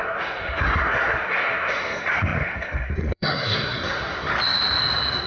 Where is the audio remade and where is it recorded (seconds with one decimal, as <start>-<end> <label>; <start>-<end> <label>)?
0.0-4.3 remade; 4.3-5.3 recorded